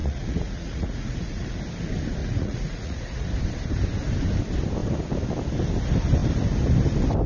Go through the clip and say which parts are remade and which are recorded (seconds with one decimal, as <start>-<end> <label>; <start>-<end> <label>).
0.0-1.6 remade; 1.6-2.2 recorded; 2.2-3.3 remade; 3.3-7.3 recorded